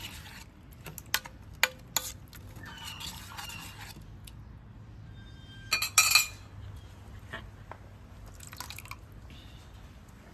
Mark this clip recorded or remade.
recorded